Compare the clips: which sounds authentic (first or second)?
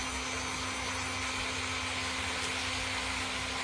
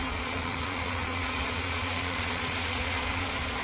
first